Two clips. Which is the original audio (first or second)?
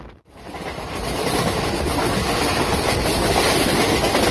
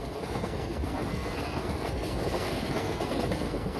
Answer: first